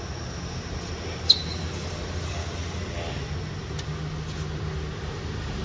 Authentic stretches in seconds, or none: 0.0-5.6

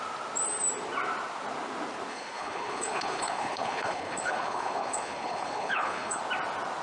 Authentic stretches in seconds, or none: 0.0-2.1; 6.2-6.8

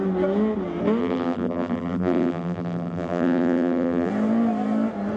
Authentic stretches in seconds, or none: 0.0-1.0; 4.1-5.2